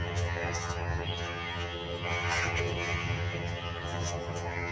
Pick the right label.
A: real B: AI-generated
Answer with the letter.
B